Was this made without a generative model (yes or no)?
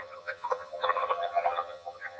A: no